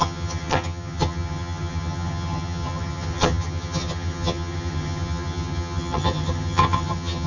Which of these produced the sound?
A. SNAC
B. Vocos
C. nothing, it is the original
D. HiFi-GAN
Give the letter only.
D